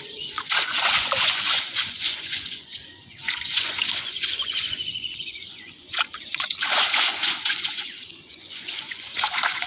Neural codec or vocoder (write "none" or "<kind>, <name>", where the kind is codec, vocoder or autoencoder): vocoder, Vocos